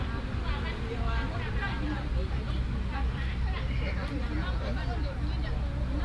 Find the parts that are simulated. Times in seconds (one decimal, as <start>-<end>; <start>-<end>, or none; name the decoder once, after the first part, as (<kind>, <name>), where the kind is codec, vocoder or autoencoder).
none